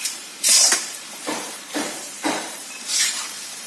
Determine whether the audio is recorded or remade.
remade